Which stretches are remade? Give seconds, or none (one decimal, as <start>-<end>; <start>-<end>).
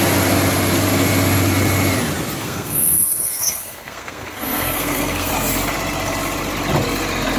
2.4-5.3